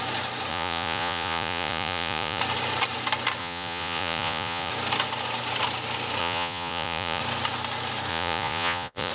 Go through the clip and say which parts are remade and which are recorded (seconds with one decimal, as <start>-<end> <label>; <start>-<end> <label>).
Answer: 0.0-0.5 recorded; 0.5-2.4 remade; 2.4-3.4 recorded; 3.4-4.7 remade; 4.7-6.2 recorded; 6.2-7.2 remade; 7.2-8.1 recorded; 8.1-9.1 remade

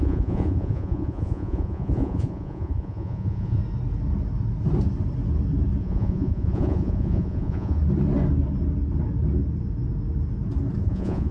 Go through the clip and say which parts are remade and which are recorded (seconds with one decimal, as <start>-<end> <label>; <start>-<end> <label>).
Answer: 0.0-3.6 remade; 3.6-5.8 recorded; 5.8-7.8 remade; 7.8-10.8 recorded; 10.8-11.3 remade